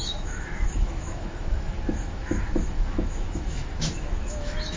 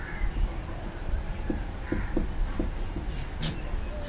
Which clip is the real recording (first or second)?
second